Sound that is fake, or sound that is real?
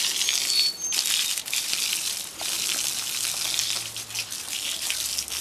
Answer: real